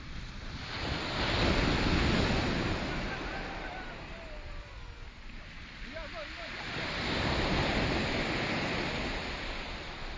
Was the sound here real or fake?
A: real